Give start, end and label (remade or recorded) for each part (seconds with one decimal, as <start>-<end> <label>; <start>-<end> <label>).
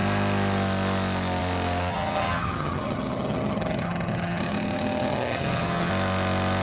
0.0-1.9 recorded; 1.9-5.9 remade; 5.9-6.6 recorded